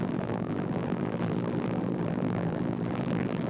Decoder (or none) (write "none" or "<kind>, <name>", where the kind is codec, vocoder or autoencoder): vocoder, BigVGAN v2